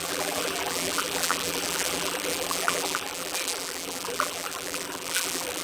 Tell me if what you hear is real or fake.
fake